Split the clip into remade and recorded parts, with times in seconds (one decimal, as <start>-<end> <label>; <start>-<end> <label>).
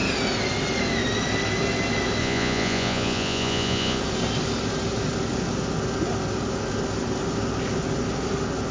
0.0-2.2 recorded; 2.2-4.0 remade; 4.0-8.7 recorded